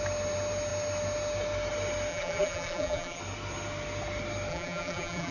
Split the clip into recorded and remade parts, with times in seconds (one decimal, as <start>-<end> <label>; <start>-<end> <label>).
0.0-2.1 recorded; 2.1-3.2 remade; 3.2-4.5 recorded; 4.5-5.3 remade